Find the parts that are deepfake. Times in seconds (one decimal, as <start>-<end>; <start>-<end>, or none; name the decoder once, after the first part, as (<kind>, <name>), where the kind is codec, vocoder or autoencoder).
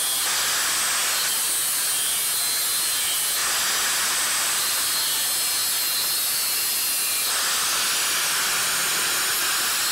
none